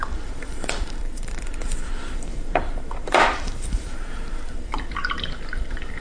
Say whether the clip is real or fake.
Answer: fake